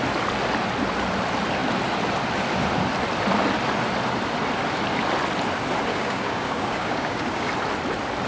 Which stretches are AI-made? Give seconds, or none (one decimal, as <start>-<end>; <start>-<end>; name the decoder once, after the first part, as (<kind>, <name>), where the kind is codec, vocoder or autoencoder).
5.9-7.5 (codec, DAC)